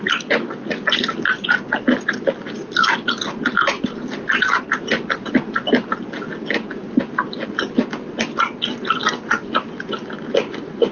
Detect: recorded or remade recorded